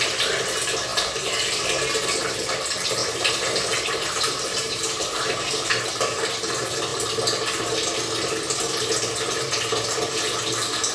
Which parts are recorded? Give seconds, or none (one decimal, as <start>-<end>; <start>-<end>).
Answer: 0.0-0.9; 1.7-3.0; 5.9-10.9